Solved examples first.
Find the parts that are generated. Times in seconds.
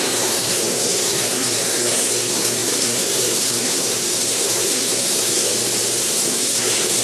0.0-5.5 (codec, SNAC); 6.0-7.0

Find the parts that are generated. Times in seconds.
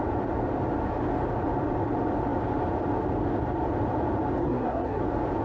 4.4-5.0 (codec, SNAC)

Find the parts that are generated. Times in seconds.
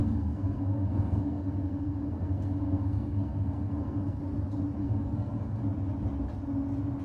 0.0-4.2 (codec, SNAC); 4.8-5.6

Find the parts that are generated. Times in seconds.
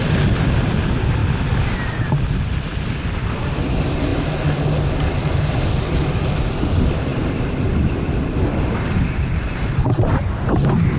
none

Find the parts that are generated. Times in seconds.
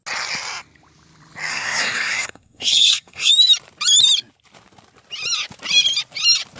1.5-3.3 (codec, SNAC)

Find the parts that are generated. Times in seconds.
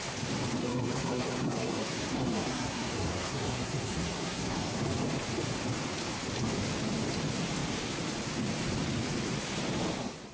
0.6-4.8 (codec, SNAC)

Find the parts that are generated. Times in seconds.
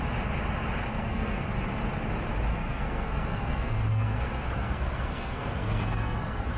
0.9-1.5 (codec, SNAC); 2.5-6.6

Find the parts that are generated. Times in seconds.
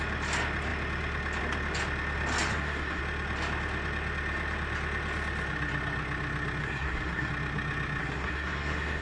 2.5-3.0 (codec, SNAC); 6.6-7.3; 8.0-9.0